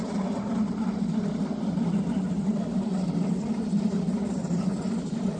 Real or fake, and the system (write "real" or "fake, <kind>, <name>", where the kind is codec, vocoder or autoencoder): real